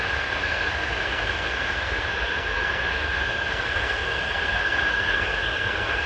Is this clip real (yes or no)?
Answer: no